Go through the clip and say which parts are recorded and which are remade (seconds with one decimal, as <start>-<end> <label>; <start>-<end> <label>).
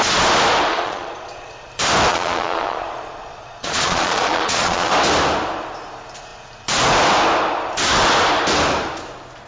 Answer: 0.0-0.7 recorded; 0.7-1.7 remade; 1.7-2.1 recorded; 2.1-4.9 remade; 4.9-9.5 recorded